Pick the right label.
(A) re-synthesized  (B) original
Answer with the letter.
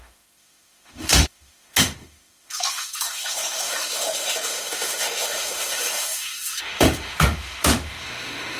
A